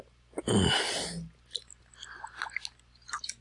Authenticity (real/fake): real